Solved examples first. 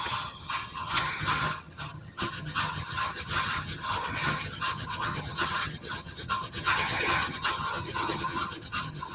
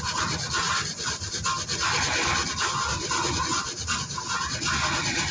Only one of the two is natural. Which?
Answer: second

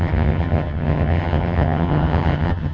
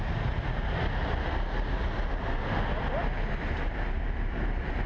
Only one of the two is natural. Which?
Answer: second